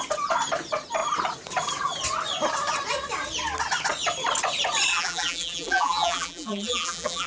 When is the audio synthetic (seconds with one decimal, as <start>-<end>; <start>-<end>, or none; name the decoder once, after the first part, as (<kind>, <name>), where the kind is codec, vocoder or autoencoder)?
4.9-7.3 (vocoder, BigVGAN v2)